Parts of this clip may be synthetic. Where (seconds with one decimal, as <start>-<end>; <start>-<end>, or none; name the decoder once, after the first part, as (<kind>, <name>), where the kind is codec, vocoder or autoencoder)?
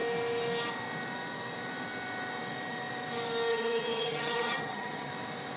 3.5-5.1 (vocoder, HiFi-GAN)